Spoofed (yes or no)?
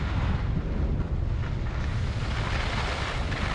no